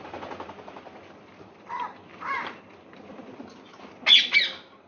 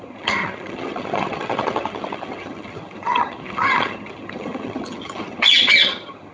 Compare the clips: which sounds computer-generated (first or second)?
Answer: second